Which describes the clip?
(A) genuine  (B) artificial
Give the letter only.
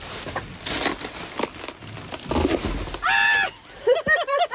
A